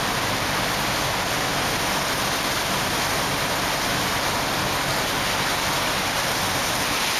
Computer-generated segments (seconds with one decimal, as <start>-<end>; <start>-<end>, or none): none